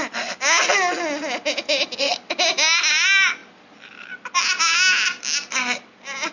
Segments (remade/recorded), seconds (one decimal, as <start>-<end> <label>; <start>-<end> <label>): 0.0-6.3 recorded